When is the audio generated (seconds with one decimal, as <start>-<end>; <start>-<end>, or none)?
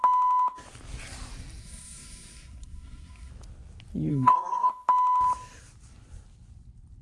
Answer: 1.6-3.3; 4.1-4.7